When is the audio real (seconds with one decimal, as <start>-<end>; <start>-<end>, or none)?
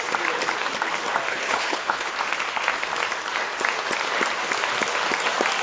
0.0-1.3; 2.1-5.6